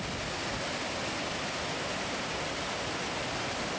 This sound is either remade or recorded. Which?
recorded